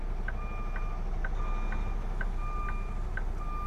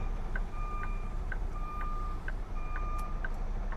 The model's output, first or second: second